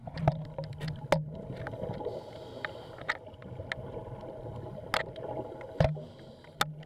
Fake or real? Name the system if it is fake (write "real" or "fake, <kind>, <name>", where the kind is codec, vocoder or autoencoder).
real